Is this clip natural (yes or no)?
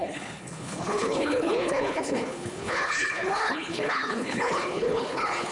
no